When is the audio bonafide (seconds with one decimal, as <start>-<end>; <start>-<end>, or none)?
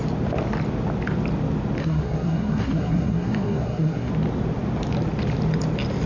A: 0.0-1.8; 4.1-6.1